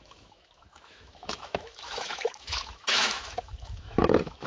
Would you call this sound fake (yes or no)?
yes